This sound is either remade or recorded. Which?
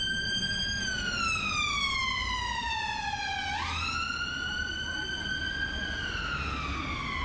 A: recorded